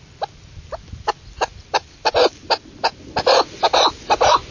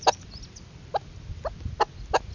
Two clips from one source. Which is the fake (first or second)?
first